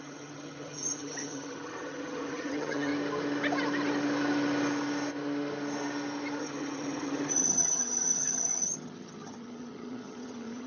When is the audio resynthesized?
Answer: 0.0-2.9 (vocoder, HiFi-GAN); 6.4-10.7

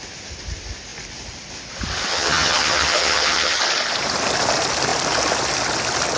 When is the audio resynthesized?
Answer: 2.1-3.6 (vocoder, HiFi-GAN)

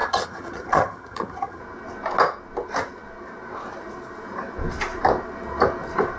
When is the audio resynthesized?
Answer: 0.0-1.6 (vocoder, HiFi-GAN)

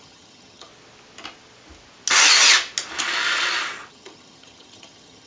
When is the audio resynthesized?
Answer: 0.0-0.7 (vocoder, HiFi-GAN); 3.9-5.3

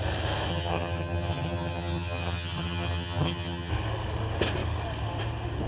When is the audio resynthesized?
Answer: 0.5-3.7 (vocoder, HiFi-GAN)